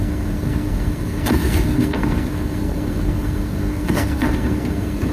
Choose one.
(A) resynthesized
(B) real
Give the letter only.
A